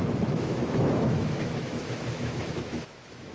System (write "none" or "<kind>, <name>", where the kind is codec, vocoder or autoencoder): autoencoder, DAC-VAE